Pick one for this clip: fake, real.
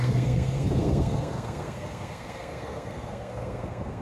fake